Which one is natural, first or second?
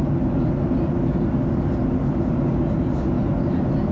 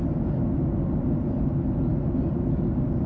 first